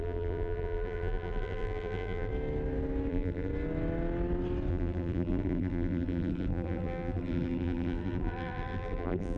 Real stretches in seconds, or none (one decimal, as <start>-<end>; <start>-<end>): 2.3-3.1; 3.5-4.7